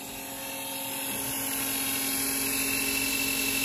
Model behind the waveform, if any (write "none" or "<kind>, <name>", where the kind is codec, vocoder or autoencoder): none